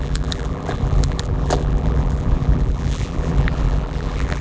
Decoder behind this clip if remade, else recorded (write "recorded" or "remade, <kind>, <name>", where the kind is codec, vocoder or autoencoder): remade, vocoder, BigVGAN v2